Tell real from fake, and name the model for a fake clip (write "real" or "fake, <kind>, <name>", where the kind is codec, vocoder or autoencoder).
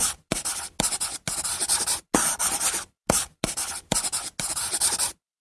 real